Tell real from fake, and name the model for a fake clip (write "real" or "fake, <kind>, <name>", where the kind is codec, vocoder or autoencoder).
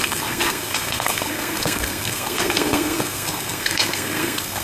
fake, codec, SNAC